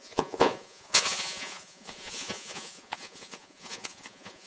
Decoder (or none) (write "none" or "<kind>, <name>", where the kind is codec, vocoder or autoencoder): vocoder, Vocos